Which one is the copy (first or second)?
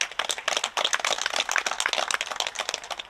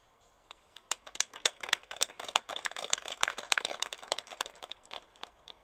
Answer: second